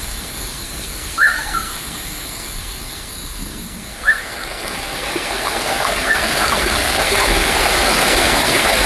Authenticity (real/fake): fake